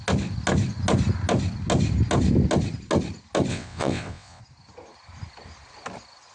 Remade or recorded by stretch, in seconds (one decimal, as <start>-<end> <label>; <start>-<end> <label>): 0.0-3.5 recorded; 3.5-4.4 remade; 4.4-6.3 recorded